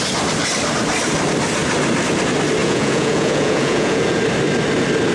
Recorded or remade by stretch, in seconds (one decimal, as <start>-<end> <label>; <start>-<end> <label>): 0.0-2.6 recorded; 2.6-4.2 remade; 4.2-5.1 recorded